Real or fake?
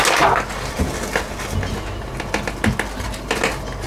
real